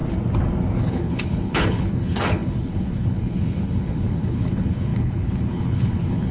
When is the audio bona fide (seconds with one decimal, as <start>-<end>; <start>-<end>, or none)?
0.0-0.8